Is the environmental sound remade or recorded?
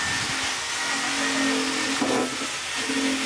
recorded